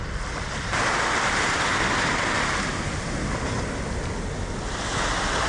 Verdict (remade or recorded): recorded